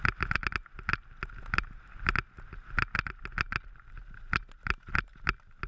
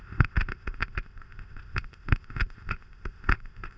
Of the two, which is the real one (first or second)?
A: first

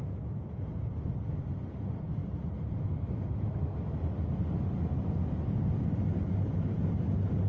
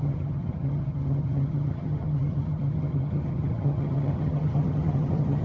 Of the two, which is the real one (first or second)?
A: first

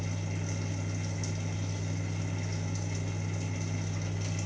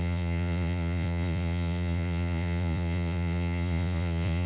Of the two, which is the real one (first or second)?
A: first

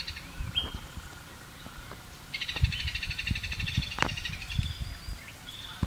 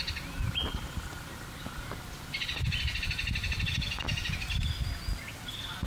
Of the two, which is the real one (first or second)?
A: second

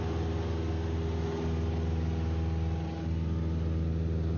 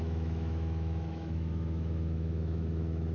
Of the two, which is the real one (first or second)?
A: first